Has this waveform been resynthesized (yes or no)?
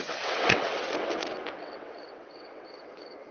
yes